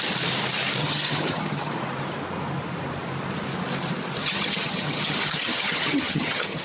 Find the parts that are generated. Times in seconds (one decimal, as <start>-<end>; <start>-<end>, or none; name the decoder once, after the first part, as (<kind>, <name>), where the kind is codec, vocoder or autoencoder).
0.8-1.7 (vocoder, HiFi-GAN); 4.2-6.6